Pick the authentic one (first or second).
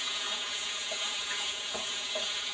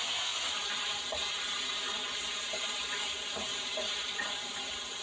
second